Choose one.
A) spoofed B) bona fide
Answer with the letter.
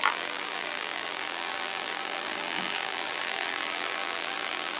A